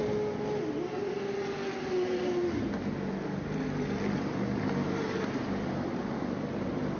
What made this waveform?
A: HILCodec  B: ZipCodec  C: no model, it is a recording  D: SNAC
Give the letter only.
C